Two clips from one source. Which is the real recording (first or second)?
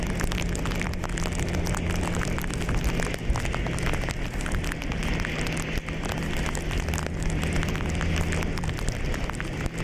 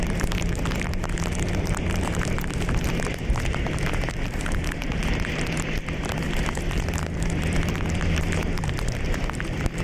first